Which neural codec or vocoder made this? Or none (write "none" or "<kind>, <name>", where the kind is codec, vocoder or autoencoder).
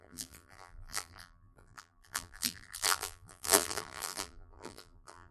vocoder, BigVGAN v2